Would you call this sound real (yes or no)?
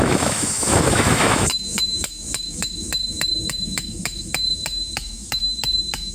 no